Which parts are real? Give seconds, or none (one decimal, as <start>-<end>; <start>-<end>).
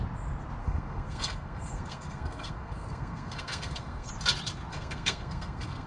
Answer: 0.0-0.6; 4.1-4.7